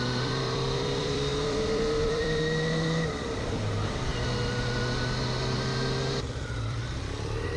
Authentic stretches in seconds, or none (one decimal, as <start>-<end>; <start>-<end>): 4.1-6.2